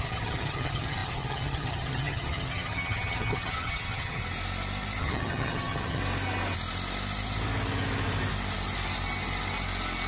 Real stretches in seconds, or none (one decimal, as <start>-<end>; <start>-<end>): 4.2-5.0; 6.0-10.1